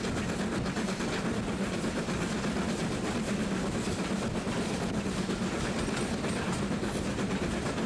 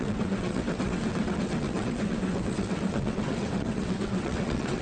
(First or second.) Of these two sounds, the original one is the first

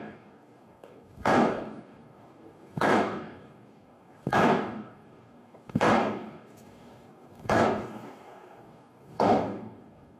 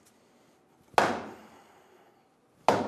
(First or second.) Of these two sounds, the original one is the second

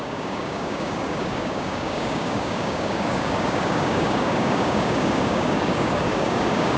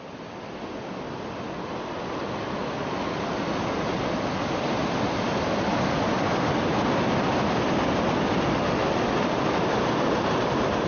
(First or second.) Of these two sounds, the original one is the second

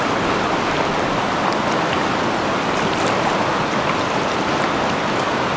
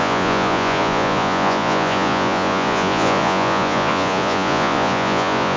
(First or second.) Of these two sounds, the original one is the first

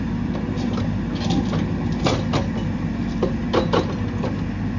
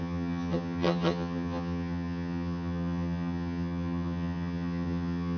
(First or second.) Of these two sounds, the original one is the first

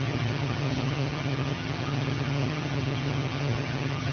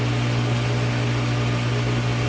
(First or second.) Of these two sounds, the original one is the second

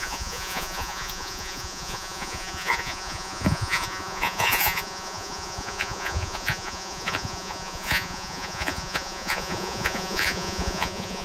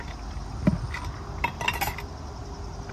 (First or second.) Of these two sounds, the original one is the second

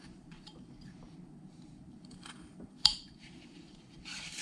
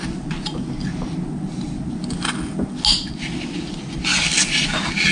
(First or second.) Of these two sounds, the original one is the second